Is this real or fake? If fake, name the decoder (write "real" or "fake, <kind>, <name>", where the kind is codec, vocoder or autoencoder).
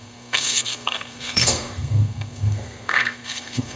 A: fake, codec, SNAC